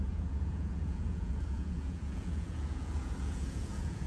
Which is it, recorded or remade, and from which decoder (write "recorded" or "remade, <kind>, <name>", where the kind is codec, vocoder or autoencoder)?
remade, vocoder, Vocos